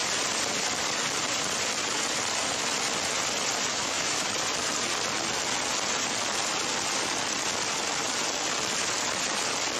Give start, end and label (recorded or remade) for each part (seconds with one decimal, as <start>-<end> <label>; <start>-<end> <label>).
0.0-3.7 recorded; 3.7-4.3 remade; 4.3-9.8 recorded